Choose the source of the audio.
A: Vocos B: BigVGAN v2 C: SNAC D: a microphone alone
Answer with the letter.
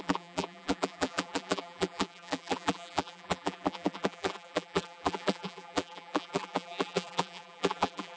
B